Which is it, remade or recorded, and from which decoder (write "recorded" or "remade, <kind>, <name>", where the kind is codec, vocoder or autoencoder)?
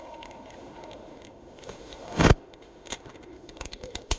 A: remade, autoencoder, DAC-VAE